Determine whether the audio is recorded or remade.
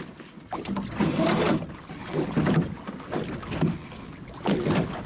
recorded